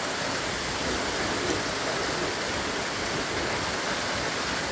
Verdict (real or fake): real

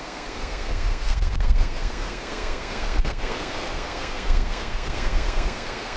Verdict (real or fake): fake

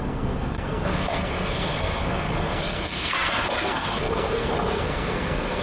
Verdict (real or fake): fake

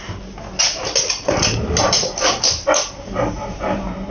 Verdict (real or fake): real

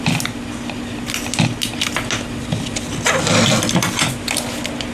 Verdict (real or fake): real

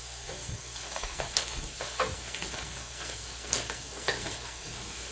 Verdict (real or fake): fake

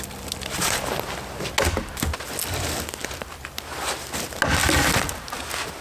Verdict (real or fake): real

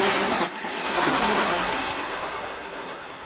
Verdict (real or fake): fake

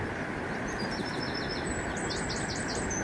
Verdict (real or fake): real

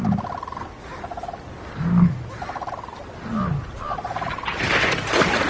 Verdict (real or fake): real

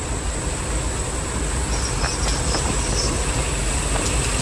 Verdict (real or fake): real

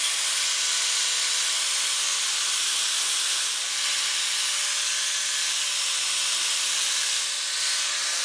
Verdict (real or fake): real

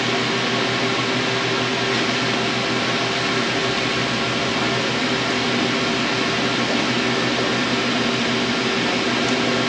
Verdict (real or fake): real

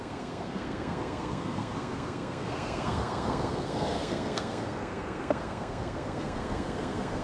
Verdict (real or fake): fake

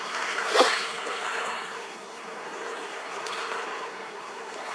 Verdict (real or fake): fake